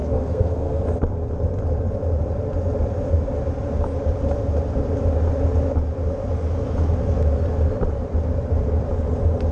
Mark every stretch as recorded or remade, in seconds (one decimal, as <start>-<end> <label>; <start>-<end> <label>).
0.0-0.8 remade; 0.8-9.5 recorded